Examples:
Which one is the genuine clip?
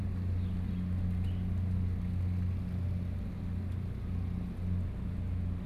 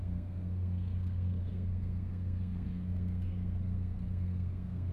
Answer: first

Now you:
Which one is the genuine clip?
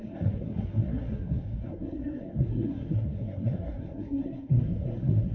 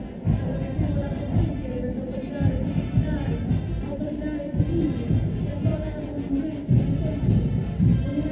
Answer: second